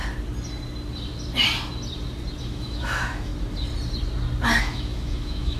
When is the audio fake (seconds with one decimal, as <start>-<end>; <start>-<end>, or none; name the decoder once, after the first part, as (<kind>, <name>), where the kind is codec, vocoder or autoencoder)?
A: 2.4-3.3 (autoencoder, DAC-VAE); 4.6-5.6